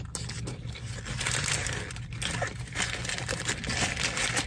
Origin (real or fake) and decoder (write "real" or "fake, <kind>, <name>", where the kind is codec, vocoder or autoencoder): real